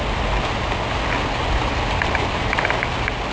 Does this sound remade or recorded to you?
recorded